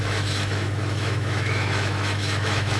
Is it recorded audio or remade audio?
remade